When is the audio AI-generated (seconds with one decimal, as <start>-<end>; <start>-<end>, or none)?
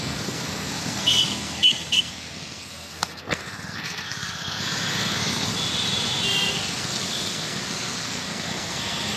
0.0-5.5; 6.5-9.2